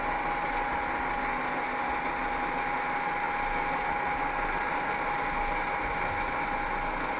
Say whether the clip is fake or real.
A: real